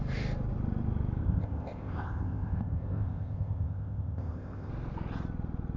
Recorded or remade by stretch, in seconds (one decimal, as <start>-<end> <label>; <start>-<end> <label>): 0.0-1.2 recorded; 1.2-4.7 remade; 4.7-5.8 recorded